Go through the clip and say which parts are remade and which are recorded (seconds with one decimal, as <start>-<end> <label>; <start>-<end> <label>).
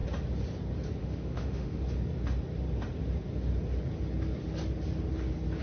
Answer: 0.0-1.0 recorded; 1.0-1.8 remade; 1.8-5.6 recorded